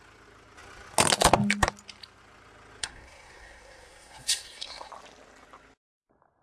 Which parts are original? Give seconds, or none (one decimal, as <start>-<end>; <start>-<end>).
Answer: 0.0-2.8; 4.9-6.4